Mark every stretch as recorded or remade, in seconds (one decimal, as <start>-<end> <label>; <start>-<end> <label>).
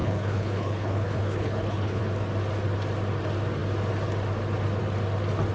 0.0-2.0 remade; 2.0-5.5 recorded